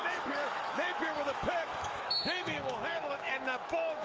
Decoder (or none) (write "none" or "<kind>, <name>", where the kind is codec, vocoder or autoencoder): autoencoder, DAC-VAE